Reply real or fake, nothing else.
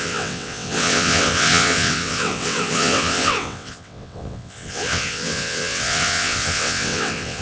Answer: fake